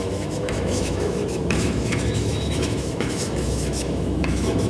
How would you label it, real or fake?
fake